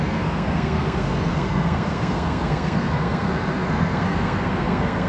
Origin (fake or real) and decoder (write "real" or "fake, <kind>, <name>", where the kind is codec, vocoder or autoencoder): fake, codec, SNAC